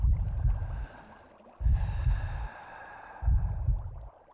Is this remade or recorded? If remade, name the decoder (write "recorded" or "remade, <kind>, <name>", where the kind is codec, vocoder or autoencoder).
recorded